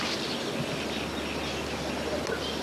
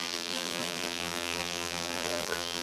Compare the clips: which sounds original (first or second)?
first